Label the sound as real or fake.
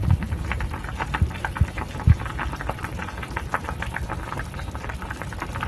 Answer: real